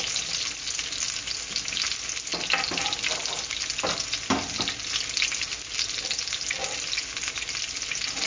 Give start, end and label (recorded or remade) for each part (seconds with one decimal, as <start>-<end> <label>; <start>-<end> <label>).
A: 0.0-8.3 recorded